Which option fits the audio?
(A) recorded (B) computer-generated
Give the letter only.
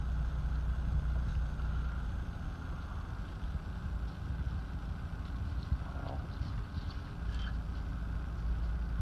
A